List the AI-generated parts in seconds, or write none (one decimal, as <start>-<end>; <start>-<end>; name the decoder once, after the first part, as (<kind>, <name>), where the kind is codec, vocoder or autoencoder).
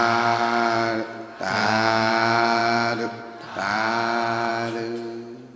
1.6-2.1 (codec, DAC)